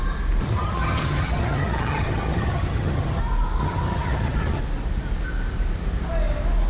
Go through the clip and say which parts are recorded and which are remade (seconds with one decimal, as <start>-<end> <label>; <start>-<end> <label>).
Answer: 0.0-0.4 recorded; 0.4-3.2 remade; 3.2-3.6 recorded; 3.6-4.6 remade; 4.6-6.7 recorded

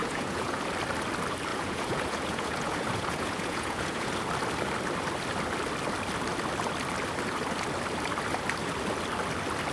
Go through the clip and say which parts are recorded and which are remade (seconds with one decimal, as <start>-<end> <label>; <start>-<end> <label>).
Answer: 0.0-0.6 remade; 0.6-1.5 recorded; 1.5-4.1 remade; 4.1-9.7 recorded

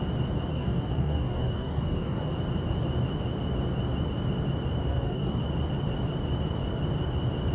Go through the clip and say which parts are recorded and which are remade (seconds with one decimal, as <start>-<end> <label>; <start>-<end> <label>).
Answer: 0.0-0.5 recorded; 0.5-2.3 remade; 2.3-4.9 recorded; 4.9-5.4 remade; 5.4-7.5 recorded

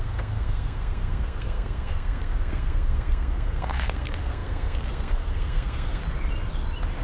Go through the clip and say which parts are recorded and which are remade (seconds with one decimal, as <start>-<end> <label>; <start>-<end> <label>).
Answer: 0.0-6.0 remade; 6.0-7.0 recorded